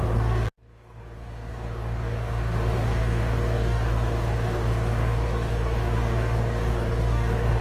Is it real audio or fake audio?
fake